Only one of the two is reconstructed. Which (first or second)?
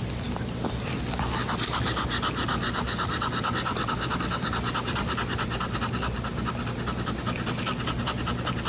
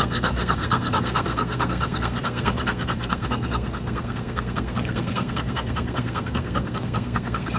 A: second